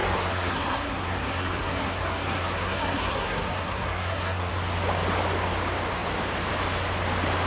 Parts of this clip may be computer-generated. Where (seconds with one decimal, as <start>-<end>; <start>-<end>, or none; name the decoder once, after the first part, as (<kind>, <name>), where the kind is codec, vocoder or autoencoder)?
0.0-4.5 (codec, SNAC)